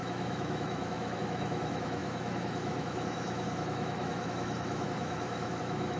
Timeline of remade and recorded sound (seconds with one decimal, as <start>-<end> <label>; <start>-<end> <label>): 0.0-6.0 remade